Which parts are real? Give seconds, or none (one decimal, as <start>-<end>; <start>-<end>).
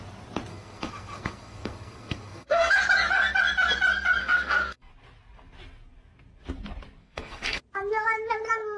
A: 0.0-0.5; 2.8-4.2; 4.9-7.0; 7.6-8.8